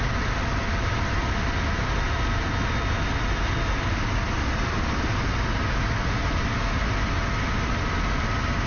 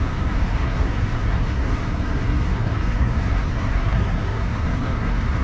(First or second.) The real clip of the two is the first